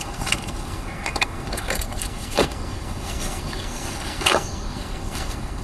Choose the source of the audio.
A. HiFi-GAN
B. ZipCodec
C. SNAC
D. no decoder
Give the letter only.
C